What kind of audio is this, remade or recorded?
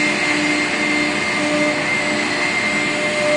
recorded